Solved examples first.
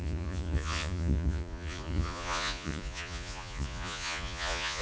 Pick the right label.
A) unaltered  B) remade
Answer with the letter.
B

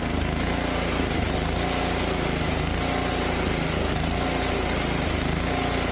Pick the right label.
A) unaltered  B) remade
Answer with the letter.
A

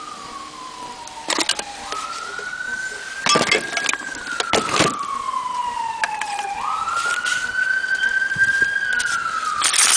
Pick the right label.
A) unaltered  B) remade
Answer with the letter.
A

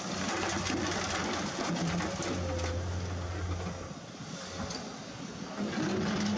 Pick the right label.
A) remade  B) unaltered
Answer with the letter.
B